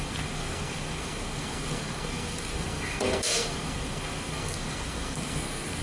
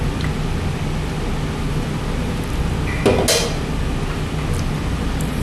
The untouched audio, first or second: second